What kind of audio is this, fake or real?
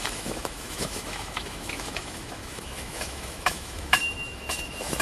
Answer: fake